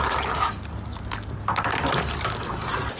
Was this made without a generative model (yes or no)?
yes